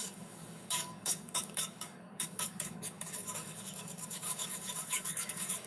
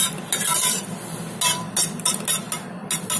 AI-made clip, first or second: first